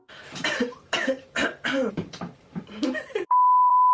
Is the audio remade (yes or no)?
yes